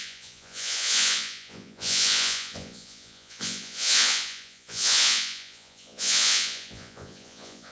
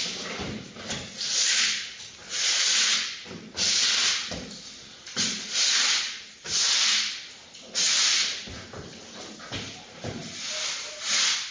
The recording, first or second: second